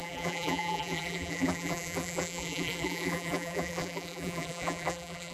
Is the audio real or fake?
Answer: fake